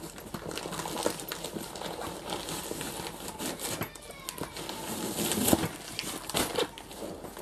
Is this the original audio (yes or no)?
yes